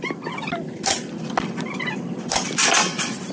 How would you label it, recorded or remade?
recorded